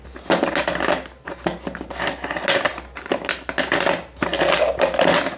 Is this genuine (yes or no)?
yes